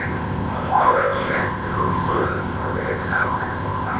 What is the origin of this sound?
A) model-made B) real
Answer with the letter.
A